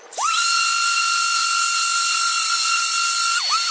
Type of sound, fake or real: real